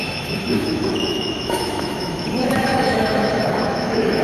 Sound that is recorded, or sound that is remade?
remade